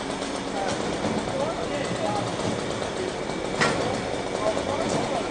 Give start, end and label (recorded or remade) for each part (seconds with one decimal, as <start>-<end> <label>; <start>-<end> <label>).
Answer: 0.0-5.3 recorded